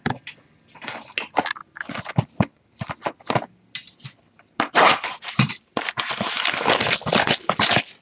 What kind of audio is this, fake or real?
real